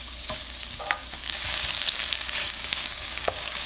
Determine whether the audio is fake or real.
fake